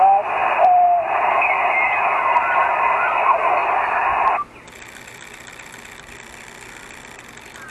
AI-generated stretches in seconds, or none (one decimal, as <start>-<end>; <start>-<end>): 0.4-1.5

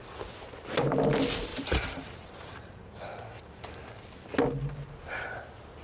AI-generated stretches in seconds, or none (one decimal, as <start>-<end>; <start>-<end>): 1.5-4.0

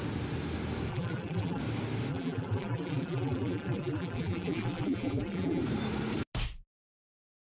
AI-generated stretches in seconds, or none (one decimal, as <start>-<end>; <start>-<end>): 0.9-1.6; 2.1-5.6

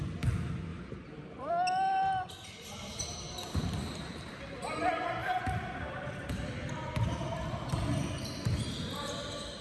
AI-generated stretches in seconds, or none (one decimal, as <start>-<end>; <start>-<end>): 0.7-1.5; 5.2-6.3

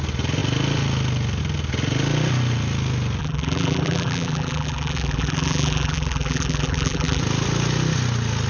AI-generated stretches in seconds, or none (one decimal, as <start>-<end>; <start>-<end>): 3.2-7.2